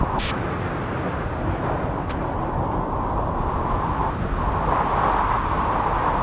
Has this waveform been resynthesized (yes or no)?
no